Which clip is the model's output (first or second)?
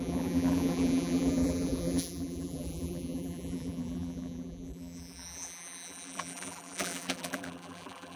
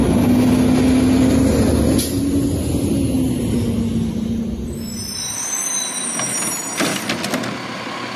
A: first